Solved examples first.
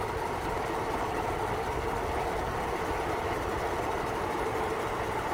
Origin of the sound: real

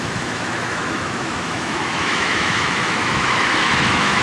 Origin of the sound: fake